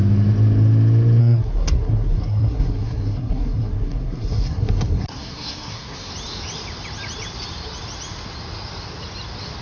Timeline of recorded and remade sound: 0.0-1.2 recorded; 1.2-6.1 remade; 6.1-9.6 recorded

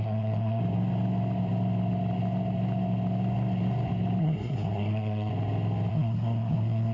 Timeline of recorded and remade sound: 0.0-0.6 remade; 0.6-4.2 recorded; 4.2-5.3 remade; 5.3-5.9 recorded; 5.9-6.9 remade

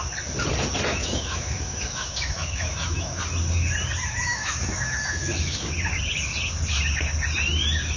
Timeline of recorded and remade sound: 0.0-0.9 recorded; 0.9-3.2 remade; 3.2-4.3 recorded; 4.3-5.7 remade; 5.7-8.0 recorded

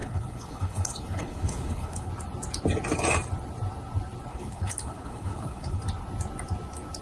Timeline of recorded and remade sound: 0.0-2.1 remade; 2.1-4.3 recorded; 4.3-5.8 remade; 5.8-7.0 recorded

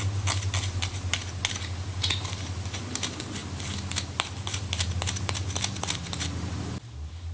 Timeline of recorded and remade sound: 0.0-7.3 recorded